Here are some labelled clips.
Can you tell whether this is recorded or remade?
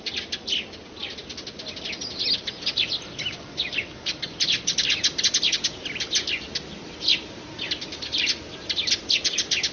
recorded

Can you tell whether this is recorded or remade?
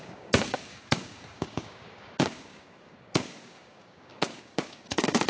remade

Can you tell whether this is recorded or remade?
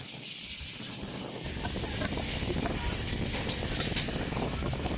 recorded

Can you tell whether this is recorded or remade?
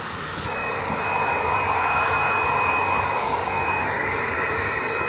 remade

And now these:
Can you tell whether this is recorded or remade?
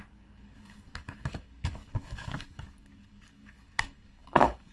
remade